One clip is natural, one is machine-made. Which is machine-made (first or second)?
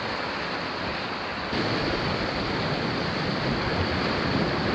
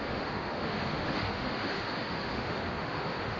second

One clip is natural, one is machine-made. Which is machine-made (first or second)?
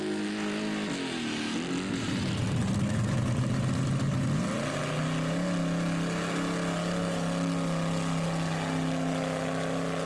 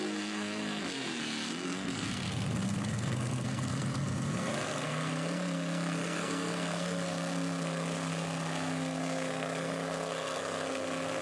second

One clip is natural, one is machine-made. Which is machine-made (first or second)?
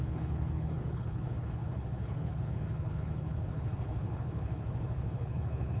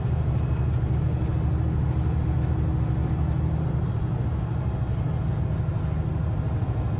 first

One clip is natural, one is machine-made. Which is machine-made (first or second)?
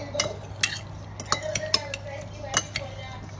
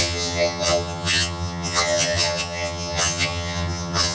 second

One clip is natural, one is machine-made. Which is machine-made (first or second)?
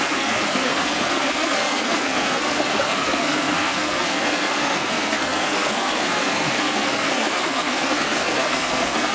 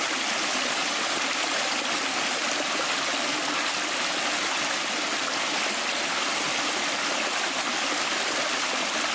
first